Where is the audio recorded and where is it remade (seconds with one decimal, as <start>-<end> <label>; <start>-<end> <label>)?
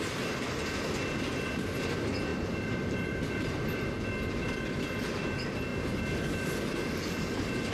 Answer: 0.0-2.3 recorded; 2.3-3.9 remade; 3.9-7.7 recorded